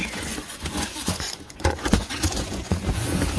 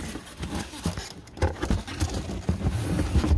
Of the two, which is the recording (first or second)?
second